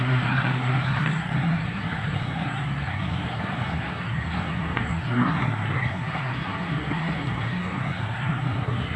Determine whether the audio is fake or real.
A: fake